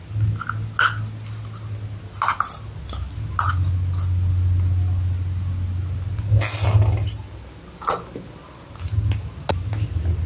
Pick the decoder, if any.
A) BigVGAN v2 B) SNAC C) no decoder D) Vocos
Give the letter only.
C